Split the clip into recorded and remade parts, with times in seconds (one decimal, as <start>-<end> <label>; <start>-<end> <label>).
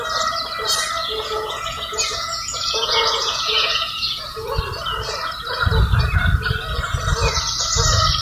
0.0-1.0 recorded; 1.0-4.6 remade; 4.6-8.2 recorded